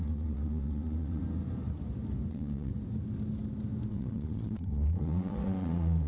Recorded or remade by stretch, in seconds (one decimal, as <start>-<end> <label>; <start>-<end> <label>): 0.0-1.2 remade; 1.2-2.3 recorded; 2.3-2.7 remade; 2.7-3.9 recorded; 3.9-6.1 remade